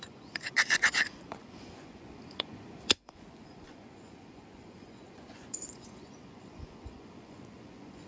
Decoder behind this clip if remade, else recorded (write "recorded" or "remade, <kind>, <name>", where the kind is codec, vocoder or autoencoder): remade, vocoder, Vocos